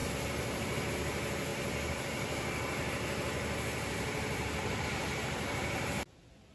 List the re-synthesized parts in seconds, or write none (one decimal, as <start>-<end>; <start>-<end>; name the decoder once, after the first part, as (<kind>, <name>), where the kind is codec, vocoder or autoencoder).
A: none